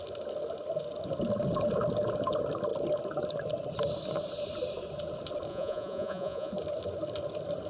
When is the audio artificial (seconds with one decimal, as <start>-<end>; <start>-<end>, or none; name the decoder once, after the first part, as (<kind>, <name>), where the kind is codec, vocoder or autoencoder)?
5.5-6.5 (vocoder, Vocos)